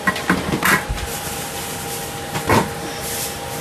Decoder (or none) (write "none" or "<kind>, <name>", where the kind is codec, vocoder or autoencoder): none